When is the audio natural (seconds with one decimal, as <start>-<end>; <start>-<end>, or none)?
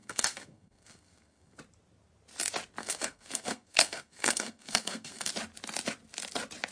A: 1.6-2.8; 5.3-6.7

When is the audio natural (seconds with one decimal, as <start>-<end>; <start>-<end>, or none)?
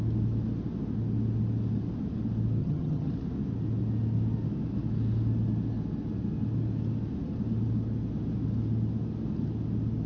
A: 0.0-2.6; 3.1-10.1